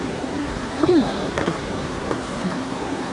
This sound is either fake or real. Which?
fake